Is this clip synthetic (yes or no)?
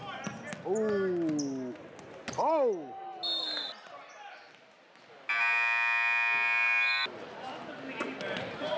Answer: no